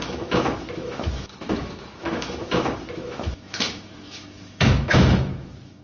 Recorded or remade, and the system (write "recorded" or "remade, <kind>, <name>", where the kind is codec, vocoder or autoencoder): remade, autoencoder, DAC-VAE